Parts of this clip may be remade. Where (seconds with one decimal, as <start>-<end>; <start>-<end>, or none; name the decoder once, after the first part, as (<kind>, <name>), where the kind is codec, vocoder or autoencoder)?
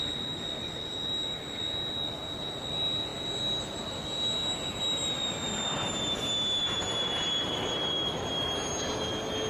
none